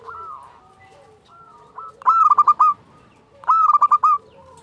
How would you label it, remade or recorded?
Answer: recorded